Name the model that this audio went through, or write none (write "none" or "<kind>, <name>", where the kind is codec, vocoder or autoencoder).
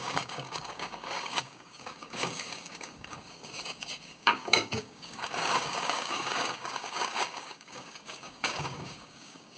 codec, DAC